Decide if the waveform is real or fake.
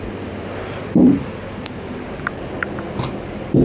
real